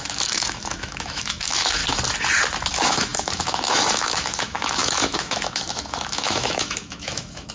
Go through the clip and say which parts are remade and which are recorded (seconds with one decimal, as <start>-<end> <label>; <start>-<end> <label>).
0.0-1.8 remade; 1.8-2.7 recorded; 2.7-7.5 remade